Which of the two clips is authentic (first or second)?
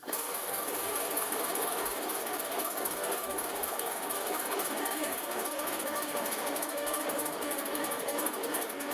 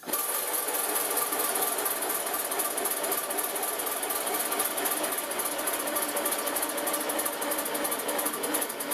second